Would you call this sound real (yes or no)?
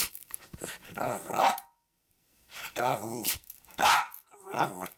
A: no